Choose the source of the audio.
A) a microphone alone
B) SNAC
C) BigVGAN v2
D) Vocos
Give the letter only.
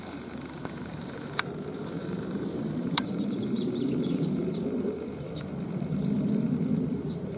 C